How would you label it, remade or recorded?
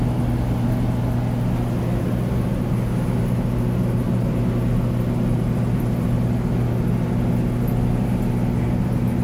recorded